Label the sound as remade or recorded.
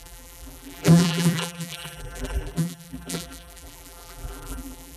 remade